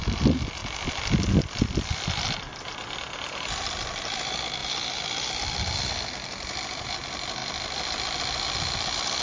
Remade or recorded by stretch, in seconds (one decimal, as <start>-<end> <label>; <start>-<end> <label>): 0.0-9.2 recorded